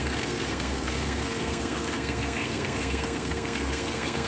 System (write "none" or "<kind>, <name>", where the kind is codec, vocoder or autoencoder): codec, SNAC